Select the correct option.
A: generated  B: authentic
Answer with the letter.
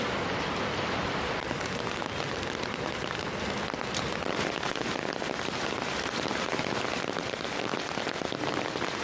B